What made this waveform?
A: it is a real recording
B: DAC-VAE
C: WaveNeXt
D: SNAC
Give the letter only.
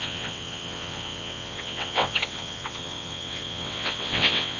C